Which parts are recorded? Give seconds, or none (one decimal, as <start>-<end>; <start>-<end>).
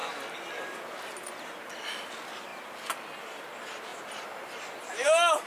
0.0-2.5; 3.4-5.5